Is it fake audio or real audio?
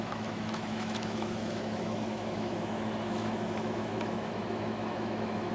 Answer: fake